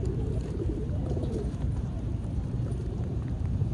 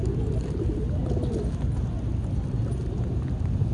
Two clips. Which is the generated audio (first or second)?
first